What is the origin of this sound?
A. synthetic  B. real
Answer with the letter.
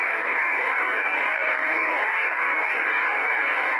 A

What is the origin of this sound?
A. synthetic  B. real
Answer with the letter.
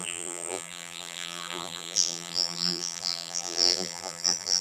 A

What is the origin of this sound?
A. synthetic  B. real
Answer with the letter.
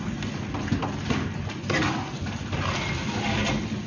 B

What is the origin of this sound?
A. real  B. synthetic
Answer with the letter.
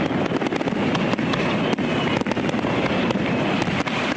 A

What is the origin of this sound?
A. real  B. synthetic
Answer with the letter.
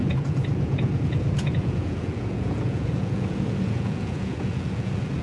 B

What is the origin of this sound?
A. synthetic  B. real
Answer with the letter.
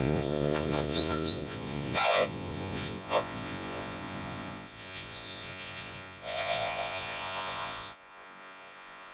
A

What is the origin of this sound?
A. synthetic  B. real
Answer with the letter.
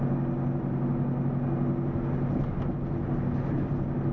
B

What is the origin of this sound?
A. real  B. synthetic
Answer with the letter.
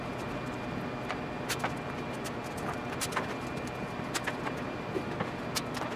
A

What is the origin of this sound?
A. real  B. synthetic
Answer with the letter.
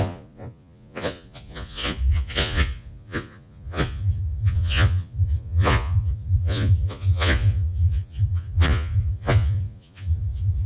B